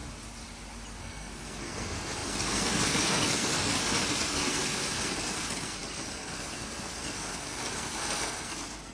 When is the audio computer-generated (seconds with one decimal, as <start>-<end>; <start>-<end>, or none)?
1.0-8.9